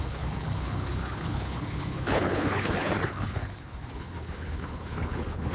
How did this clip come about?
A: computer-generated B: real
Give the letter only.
A